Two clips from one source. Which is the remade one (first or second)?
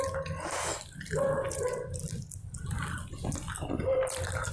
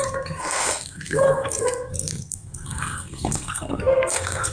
second